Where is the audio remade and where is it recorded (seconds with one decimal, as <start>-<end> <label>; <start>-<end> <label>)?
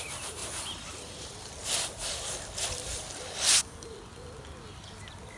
0.0-0.4 recorded; 0.4-3.6 remade; 3.6-5.4 recorded